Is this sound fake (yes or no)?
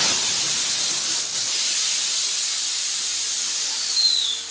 no